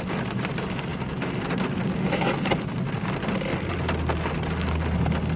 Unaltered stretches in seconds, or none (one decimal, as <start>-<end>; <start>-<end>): 0.0-5.4